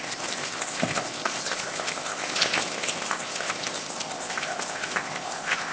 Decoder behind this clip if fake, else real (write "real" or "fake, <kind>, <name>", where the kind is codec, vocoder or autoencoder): fake, codec, ZipCodec